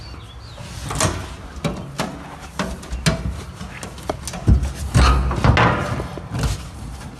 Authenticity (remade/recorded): recorded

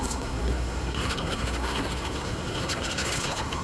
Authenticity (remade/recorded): remade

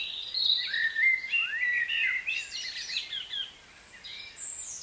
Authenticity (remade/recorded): recorded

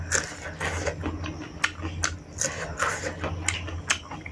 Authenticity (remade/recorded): recorded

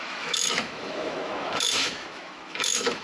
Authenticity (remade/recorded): remade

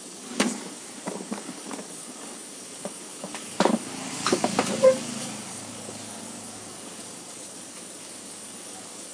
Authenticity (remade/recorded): remade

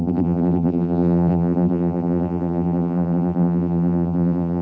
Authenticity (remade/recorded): remade